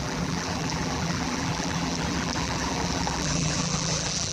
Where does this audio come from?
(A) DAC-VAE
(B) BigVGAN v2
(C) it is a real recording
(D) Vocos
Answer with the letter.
B